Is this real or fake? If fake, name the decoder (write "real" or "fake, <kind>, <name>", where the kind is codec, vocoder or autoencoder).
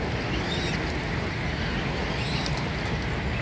real